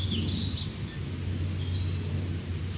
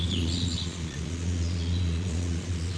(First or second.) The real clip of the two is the first